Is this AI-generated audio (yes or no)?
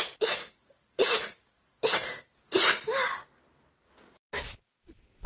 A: no